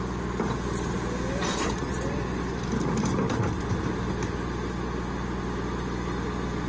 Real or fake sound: real